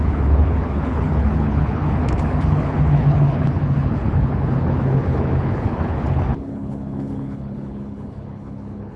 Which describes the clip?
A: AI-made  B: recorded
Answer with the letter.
A